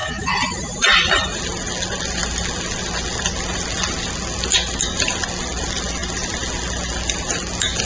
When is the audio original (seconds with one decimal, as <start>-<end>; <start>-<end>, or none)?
1.4-7.8